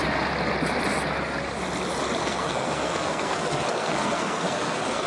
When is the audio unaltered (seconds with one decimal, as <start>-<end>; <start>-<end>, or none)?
0.0-2.2